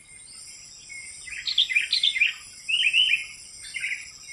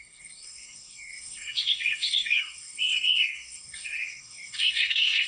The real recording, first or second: first